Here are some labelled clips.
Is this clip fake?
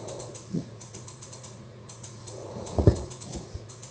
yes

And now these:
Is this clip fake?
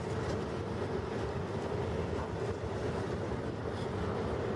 no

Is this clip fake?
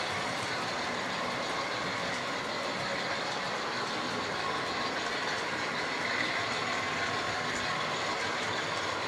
no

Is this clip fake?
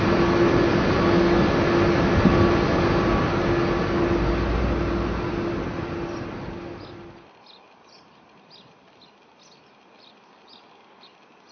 no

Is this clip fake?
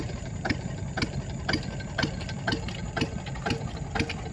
no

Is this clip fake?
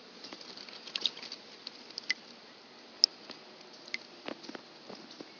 no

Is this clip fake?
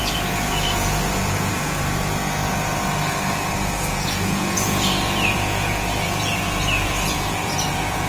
yes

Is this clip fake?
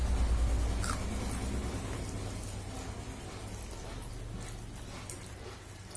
no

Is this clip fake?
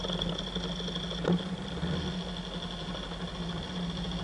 no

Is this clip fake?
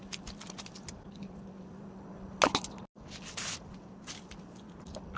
no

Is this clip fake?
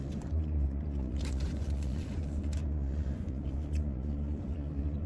yes